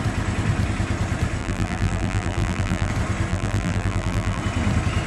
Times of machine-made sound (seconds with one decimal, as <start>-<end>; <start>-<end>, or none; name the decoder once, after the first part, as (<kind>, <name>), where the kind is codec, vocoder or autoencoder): 1.4-2.9 (vocoder, BigVGAN v2); 3.3-4.4